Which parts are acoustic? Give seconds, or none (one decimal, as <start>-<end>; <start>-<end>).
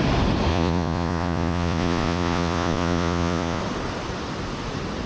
0.0-0.5; 3.6-5.1